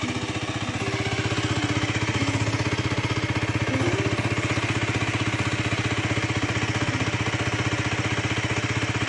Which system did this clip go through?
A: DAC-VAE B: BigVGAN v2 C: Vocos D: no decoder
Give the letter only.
D